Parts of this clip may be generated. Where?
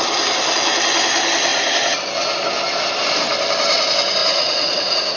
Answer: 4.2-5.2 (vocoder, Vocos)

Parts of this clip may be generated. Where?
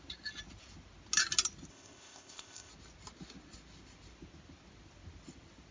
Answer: 1.7-2.7 (codec, ZipCodec)